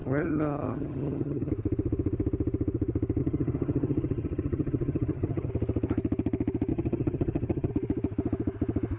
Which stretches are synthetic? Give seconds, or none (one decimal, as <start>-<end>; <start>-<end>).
0.0-1.5; 3.2-5.5; 6.7-7.7